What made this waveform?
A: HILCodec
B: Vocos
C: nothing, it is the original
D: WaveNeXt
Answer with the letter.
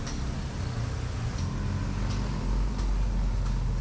C